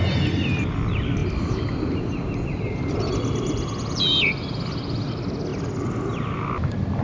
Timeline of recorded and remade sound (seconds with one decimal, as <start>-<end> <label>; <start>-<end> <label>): 0.0-7.0 recorded